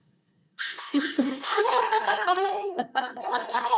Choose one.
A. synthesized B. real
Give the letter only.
A